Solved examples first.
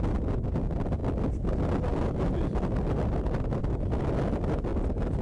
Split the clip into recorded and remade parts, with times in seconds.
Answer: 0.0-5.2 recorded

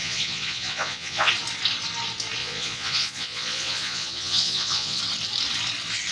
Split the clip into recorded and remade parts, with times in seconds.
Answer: 0.0-1.3 remade; 1.3-2.4 recorded; 2.4-5.0 remade; 5.0-6.1 recorded

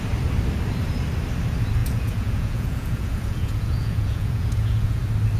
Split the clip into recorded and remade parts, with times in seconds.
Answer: 0.0-1.8 recorded; 1.8-5.0 remade; 5.0-5.4 recorded

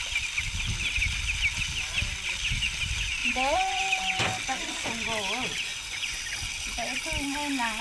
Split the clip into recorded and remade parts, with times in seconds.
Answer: 0.0-3.2 recorded; 3.2-3.8 remade; 3.8-5.7 recorded; 5.7-6.2 remade; 6.2-7.8 recorded

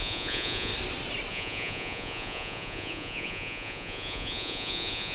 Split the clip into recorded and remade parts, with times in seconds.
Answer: 0.0-0.7 remade; 0.7-1.3 recorded; 1.3-5.1 remade